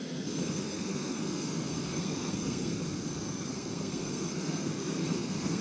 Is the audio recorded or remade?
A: remade